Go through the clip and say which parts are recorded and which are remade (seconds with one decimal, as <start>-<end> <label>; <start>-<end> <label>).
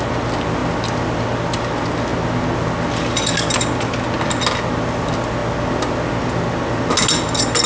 0.0-7.7 recorded